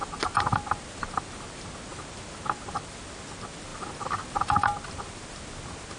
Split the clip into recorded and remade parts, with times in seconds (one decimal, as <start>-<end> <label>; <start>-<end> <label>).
0.0-6.0 recorded